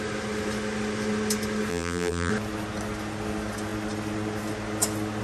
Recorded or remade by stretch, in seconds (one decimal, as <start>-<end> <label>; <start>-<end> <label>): 0.0-1.7 recorded; 1.7-2.3 remade; 2.3-5.2 recorded